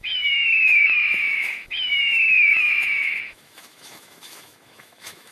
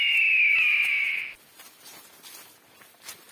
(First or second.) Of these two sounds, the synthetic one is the first